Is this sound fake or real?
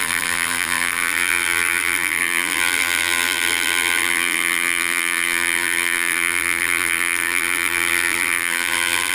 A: fake